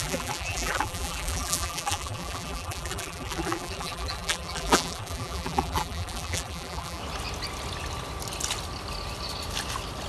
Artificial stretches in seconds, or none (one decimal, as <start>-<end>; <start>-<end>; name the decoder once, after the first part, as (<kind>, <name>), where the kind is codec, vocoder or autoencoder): 0.0-7.0 (vocoder, BigVGAN v2)